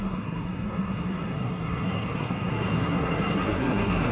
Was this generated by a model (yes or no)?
yes